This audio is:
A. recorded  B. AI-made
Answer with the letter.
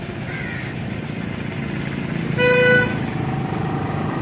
A